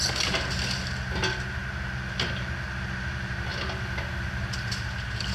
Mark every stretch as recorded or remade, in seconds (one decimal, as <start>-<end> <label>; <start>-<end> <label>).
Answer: 0.0-5.3 recorded